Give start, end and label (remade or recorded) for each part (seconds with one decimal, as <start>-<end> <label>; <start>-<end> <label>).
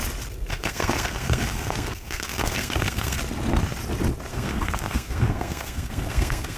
0.0-0.5 recorded; 0.5-3.2 remade; 3.2-4.3 recorded; 4.3-6.6 remade